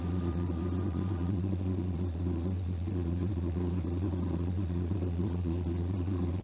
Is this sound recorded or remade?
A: remade